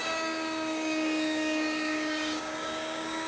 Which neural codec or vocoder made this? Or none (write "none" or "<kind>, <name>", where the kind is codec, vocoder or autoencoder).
codec, DAC